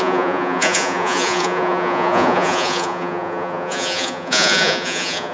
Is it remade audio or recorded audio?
remade